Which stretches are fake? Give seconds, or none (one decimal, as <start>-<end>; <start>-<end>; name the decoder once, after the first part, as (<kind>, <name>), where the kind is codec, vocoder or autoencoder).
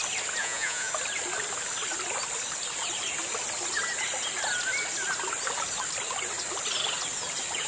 0.4-0.9 (vocoder, Vocos)